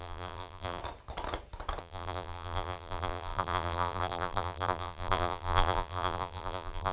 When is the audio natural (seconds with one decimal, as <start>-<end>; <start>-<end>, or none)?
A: 0.8-1.8